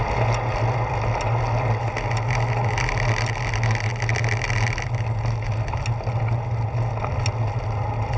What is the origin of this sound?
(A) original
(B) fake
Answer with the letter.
A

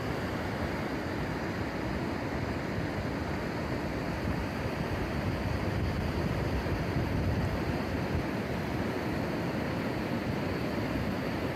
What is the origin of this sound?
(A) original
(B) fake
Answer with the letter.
A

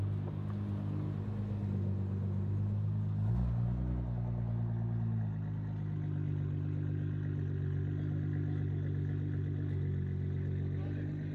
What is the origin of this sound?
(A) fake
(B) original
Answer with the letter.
B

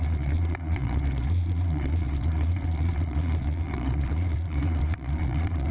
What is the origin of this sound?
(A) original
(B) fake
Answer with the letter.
B